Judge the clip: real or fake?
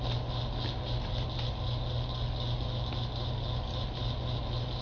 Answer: real